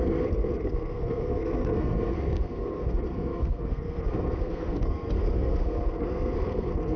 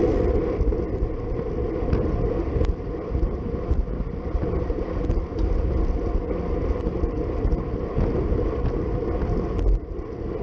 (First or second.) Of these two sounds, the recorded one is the second